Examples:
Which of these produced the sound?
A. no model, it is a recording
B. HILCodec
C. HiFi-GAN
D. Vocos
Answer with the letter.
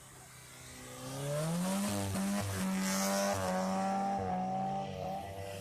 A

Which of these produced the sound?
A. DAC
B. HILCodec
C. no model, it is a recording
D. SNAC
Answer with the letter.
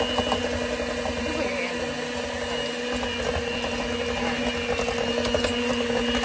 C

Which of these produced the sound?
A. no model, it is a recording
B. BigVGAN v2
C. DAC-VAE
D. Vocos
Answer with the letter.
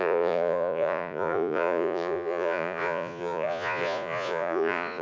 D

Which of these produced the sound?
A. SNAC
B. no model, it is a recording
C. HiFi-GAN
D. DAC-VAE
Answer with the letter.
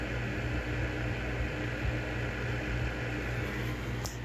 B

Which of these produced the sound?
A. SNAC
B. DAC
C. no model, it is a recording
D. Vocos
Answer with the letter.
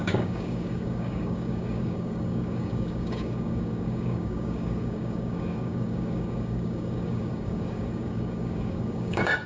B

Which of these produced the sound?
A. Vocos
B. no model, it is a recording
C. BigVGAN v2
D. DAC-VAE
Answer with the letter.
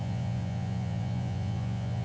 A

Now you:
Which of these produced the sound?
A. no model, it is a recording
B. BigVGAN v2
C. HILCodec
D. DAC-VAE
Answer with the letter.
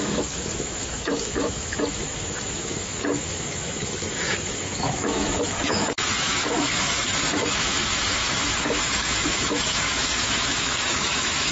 D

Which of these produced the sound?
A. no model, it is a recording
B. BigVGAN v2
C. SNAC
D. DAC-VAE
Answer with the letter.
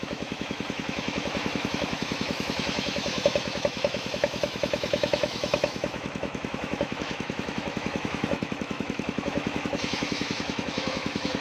D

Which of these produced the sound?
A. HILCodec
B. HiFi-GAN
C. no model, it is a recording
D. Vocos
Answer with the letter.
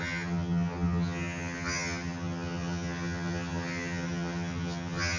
B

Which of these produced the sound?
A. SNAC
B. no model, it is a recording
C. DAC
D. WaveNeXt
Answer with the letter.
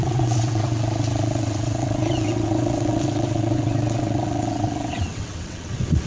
D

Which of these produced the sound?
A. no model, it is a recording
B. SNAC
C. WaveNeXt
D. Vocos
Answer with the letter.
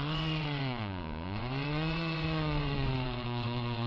C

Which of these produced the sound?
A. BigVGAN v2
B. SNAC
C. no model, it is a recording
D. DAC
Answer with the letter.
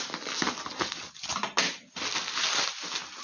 C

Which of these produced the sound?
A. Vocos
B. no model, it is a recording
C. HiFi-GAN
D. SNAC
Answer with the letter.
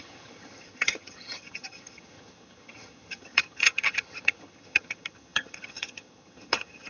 C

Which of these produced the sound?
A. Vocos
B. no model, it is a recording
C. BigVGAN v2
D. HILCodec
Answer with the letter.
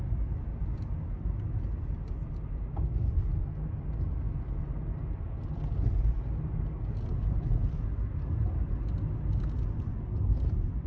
B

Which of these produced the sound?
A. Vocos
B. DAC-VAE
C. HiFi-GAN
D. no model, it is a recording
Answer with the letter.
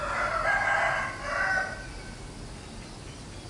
D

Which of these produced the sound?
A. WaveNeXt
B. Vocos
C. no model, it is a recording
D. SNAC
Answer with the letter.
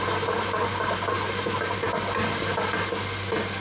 C